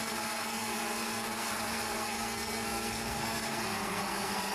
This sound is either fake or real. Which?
fake